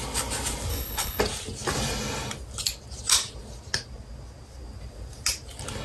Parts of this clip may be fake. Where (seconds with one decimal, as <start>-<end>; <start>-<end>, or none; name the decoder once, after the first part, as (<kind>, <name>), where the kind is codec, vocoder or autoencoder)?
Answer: 0.7-1.2 (codec, HILCodec)